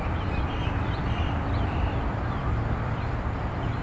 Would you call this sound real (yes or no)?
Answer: no